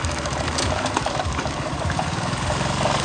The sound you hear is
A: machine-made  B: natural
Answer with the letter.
A